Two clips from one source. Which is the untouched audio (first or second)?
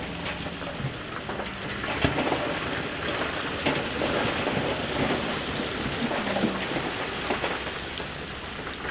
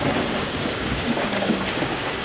first